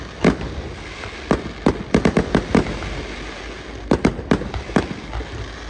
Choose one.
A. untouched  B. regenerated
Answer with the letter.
A